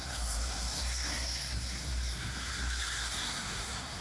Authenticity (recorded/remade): remade